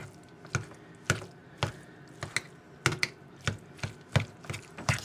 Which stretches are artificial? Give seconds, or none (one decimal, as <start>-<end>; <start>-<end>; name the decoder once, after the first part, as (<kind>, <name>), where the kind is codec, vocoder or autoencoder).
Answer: none

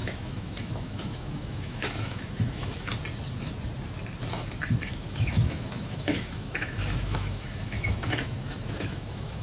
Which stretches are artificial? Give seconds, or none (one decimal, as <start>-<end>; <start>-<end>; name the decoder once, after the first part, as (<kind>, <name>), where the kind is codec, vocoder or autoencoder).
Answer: 0.0-2.9 (autoencoder, DAC-VAE); 4.8-9.4

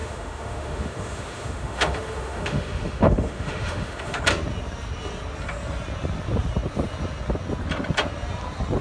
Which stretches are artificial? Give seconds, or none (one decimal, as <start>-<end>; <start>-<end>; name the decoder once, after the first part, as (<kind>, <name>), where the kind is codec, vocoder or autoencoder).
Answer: 0.0-4.2 (autoencoder, DAC-VAE)